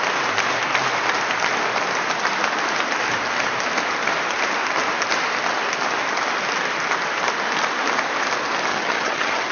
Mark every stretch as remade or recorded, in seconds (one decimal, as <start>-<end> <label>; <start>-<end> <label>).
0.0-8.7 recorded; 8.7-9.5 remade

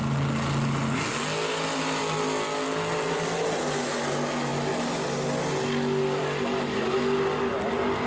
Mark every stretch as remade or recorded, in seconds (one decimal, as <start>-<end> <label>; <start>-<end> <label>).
0.0-8.1 recorded

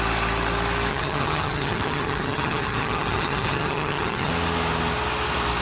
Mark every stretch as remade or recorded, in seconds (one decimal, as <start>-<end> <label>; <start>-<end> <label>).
0.0-0.9 recorded; 0.9-4.3 remade; 4.3-5.6 recorded

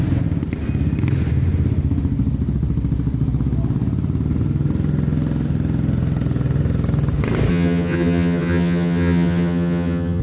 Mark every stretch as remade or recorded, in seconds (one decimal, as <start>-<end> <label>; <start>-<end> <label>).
0.0-7.5 recorded; 7.5-10.2 remade

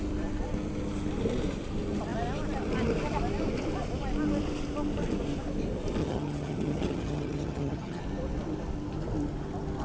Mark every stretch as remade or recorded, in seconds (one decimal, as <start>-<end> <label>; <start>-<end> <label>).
0.0-6.0 recorded; 6.0-8.0 remade; 8.0-9.8 recorded

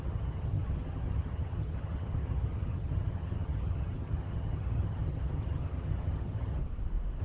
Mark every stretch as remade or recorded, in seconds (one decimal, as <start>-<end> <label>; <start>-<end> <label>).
0.0-6.6 remade; 6.6-7.2 recorded

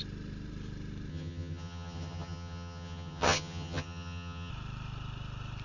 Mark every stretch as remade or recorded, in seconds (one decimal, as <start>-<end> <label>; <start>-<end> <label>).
0.0-1.1 recorded; 1.1-4.5 remade; 4.5-5.6 recorded